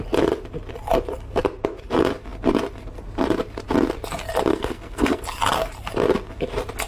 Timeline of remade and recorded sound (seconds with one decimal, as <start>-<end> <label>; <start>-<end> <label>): 0.0-4.5 recorded; 4.5-5.2 remade; 5.2-6.9 recorded